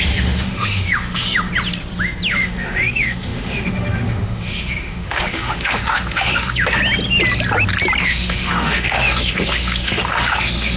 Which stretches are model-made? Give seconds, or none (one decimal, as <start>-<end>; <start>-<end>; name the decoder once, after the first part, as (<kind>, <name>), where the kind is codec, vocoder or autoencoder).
0.0-1.5 (autoencoder, DAC-VAE); 2.3-6.8; 8.0-10.8